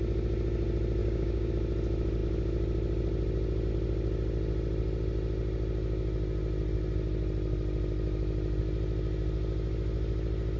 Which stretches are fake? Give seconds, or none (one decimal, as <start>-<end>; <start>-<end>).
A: 1.0-1.5